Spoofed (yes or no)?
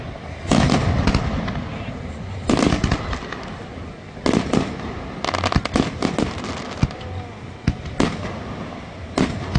no